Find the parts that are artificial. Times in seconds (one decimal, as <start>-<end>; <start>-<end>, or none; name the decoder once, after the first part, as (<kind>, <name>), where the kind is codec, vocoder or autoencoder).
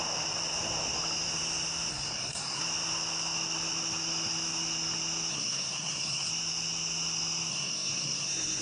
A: 1.9-2.6 (codec, SNAC); 5.3-6.3; 7.5-8.6